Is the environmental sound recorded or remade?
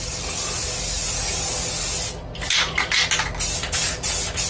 recorded